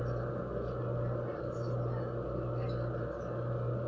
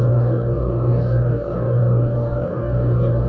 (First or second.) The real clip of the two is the first